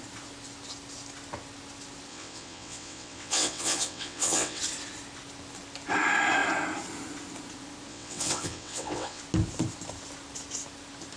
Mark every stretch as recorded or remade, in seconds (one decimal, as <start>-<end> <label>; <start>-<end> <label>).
0.0-2.1 recorded; 2.1-4.6 remade; 4.6-7.9 recorded; 7.9-9.2 remade; 9.2-11.2 recorded